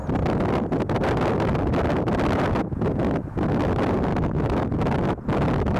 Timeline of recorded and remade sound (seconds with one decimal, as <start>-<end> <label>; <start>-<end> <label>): 0.0-4.1 recorded; 4.1-4.7 remade; 4.7-5.8 recorded